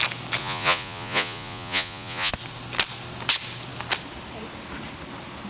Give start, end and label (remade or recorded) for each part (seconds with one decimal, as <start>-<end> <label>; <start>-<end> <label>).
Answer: 0.0-0.4 recorded; 0.4-2.3 remade; 2.3-5.5 recorded